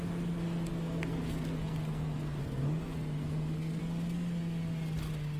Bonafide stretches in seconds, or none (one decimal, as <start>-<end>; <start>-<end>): 0.0-0.7; 3.8-5.4